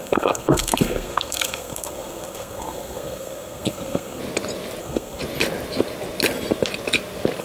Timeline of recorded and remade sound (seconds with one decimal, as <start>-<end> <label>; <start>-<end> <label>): 0.0-4.2 remade; 4.2-4.8 recorded; 4.8-5.2 remade; 5.2-7.4 recorded

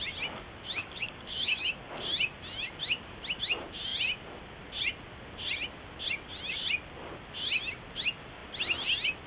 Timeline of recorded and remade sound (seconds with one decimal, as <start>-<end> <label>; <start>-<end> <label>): 0.0-0.8 recorded; 0.8-2.0 remade; 2.0-9.3 recorded

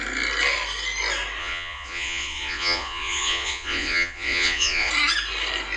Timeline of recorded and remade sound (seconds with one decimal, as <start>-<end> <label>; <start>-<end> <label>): 0.0-1.4 recorded; 1.4-4.9 remade; 4.9-5.8 recorded

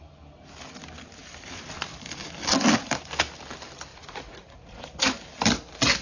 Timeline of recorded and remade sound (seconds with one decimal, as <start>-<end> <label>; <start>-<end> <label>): 0.0-3.9 recorded; 3.9-4.9 remade; 4.9-6.0 recorded

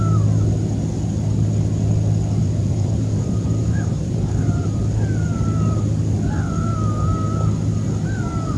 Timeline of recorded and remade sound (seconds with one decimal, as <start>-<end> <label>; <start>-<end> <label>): 0.0-2.4 recorded; 2.4-4.8 remade; 4.8-8.6 recorded

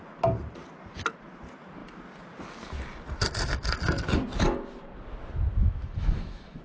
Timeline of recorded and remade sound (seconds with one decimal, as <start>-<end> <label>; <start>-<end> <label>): 0.0-5.6 recorded; 5.6-6.6 remade